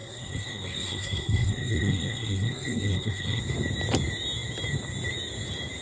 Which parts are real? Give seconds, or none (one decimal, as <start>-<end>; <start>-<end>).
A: 3.4-5.8